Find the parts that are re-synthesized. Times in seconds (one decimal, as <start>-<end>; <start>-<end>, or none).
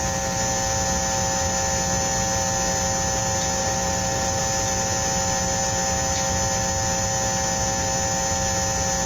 3.6-4.4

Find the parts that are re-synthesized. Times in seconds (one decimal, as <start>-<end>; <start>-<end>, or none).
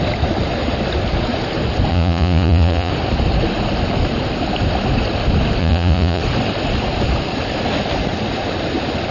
1.9-2.9; 5.6-6.2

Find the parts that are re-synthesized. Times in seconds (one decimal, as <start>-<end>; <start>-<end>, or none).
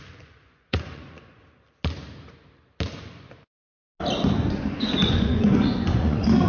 0.0-1.4; 3.0-3.8; 4.5-6.5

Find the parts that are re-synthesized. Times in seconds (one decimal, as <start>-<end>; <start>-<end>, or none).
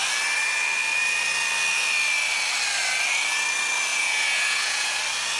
3.9-5.0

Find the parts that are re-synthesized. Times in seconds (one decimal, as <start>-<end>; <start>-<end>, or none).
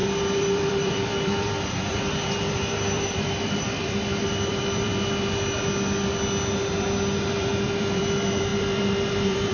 0.0-4.9; 7.2-9.5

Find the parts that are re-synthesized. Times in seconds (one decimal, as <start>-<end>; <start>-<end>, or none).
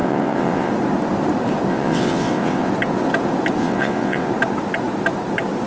0.0-0.7; 1.7-2.7; 3.6-4.3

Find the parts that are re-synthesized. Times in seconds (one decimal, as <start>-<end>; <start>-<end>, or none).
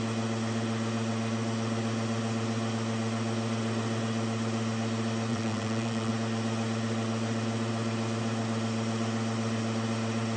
5.3-6.1